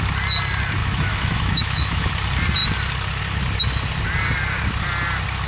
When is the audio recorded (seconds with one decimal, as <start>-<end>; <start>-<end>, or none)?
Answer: 0.0-0.8; 2.1-5.5